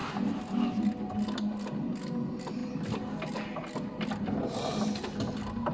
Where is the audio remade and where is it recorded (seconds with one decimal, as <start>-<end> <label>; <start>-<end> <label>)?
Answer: 0.0-5.7 recorded